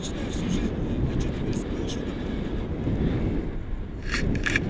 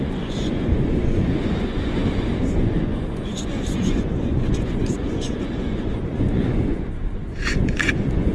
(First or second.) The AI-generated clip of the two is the second